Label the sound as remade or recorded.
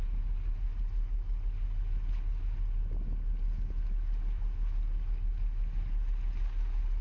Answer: recorded